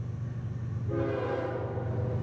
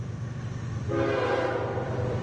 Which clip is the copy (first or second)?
second